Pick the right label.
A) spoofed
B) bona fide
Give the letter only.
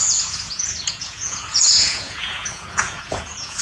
A